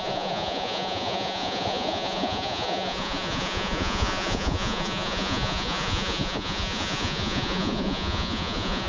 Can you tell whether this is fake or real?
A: fake